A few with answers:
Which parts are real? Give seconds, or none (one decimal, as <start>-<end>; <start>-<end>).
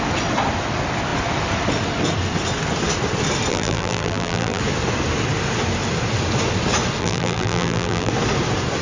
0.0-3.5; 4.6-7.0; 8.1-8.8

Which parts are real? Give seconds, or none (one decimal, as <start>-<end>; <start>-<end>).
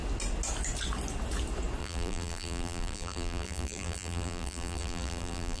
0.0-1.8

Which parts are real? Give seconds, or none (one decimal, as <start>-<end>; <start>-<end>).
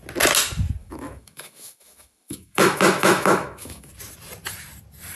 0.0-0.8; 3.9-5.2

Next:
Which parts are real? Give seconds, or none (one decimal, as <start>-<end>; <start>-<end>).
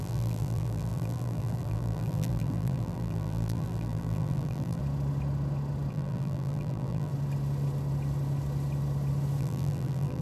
4.8-5.9; 7.1-9.4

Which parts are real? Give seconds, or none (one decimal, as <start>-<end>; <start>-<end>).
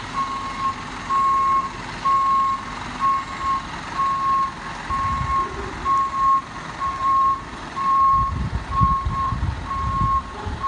0.0-7.0; 9.7-10.7